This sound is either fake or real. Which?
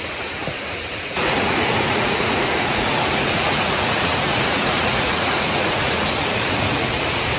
fake